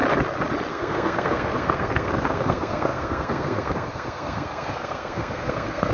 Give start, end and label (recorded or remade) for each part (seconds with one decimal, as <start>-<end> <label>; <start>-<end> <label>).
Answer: 0.0-0.7 recorded; 0.7-5.9 remade